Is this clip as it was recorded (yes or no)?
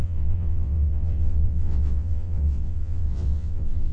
no